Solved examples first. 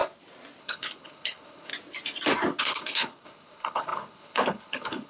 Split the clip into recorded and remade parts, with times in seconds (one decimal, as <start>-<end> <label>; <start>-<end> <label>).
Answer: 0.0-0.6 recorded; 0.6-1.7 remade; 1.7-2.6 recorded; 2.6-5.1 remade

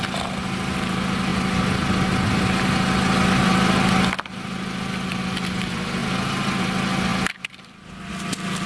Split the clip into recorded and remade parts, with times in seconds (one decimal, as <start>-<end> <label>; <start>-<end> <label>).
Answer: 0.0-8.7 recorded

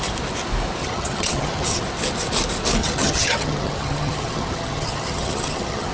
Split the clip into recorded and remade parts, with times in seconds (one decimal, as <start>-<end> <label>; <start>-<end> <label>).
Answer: 0.0-0.8 recorded; 0.8-1.8 remade; 1.8-2.8 recorded; 2.8-5.9 remade

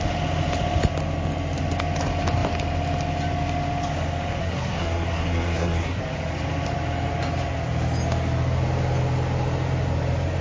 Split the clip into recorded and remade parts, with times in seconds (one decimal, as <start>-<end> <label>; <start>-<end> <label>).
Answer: 0.0-4.4 recorded; 4.4-6.0 remade; 6.0-10.4 recorded